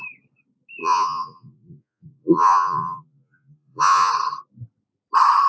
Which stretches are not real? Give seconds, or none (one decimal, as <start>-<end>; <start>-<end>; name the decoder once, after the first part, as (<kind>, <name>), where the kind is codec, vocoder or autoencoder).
0.8-4.1 (vocoder, Vocos)

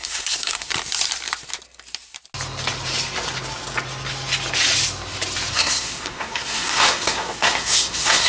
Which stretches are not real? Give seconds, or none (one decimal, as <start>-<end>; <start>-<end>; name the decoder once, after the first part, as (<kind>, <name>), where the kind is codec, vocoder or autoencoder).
0.0-0.7 (codec, SNAC); 5.5-8.3

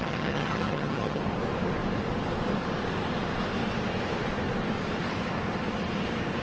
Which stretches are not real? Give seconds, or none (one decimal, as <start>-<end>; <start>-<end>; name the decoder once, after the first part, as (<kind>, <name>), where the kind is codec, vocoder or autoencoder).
0.0-1.2 (vocoder, HiFi-GAN)